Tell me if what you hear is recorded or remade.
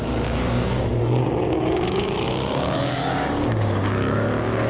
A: remade